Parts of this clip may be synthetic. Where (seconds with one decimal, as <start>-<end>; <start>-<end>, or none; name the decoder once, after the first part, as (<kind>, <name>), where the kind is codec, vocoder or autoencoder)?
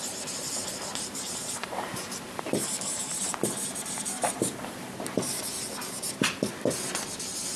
0.6-5.2 (vocoder, BigVGAN v2)